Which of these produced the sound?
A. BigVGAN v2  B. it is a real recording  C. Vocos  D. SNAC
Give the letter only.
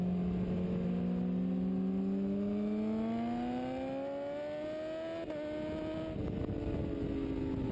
B